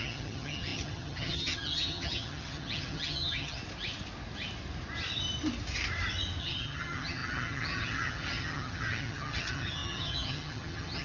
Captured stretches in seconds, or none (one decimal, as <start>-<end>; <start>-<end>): 3.6-6.4